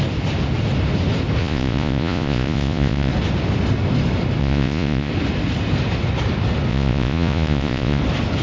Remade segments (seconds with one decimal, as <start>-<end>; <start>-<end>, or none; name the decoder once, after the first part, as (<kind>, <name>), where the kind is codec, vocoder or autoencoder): 1.4-3.1 (vocoder, Vocos); 4.4-5.1; 6.7-8.0